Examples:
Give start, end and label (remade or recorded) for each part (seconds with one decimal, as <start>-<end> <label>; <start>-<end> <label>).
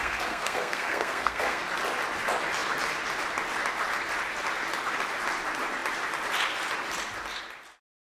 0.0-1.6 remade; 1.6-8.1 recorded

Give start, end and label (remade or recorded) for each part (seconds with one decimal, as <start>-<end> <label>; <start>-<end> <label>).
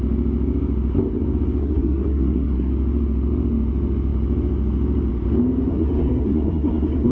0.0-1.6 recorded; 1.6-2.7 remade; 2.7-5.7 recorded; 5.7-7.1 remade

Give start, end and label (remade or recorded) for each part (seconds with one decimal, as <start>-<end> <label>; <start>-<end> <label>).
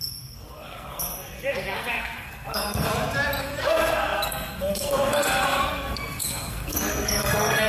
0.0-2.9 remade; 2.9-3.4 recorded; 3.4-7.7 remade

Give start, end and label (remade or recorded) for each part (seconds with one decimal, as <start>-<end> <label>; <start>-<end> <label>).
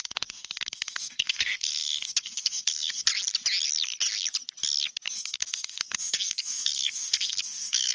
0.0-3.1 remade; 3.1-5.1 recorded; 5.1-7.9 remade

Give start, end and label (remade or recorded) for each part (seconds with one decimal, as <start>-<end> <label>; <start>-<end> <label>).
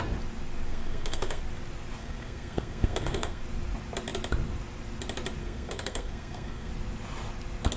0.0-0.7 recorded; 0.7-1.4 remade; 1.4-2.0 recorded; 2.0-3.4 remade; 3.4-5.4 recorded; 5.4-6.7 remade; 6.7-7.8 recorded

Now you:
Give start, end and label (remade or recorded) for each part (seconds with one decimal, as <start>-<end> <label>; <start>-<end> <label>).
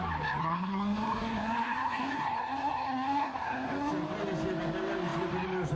0.0-0.4 recorded; 0.4-3.9 remade; 3.9-5.8 recorded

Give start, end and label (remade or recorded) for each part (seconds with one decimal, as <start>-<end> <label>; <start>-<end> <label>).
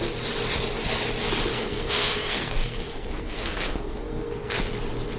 0.0-1.5 recorded; 1.5-4.6 remade; 4.6-5.2 recorded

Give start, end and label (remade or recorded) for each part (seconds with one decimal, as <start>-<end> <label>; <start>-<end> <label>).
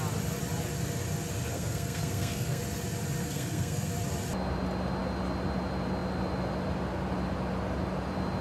0.0-1.5 recorded; 1.5-2.6 remade; 2.6-3.2 recorded; 3.2-3.9 remade; 3.9-8.4 recorded